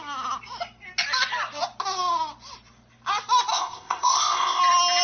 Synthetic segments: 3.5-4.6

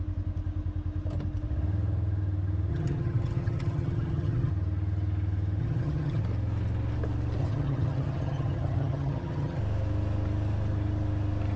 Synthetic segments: 2.7-4.5; 5.6-6.2; 7.4-9.6

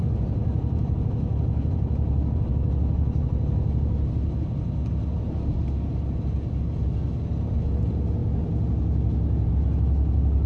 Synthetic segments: none